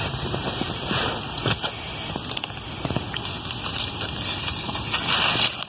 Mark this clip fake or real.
real